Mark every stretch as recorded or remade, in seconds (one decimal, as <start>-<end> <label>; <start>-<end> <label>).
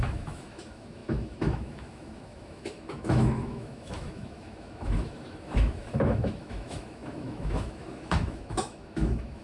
0.0-9.4 remade